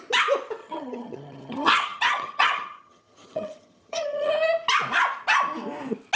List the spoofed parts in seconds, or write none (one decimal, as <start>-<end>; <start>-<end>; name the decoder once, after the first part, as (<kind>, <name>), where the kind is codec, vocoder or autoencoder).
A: 0.6-4.3 (vocoder, HiFi-GAN)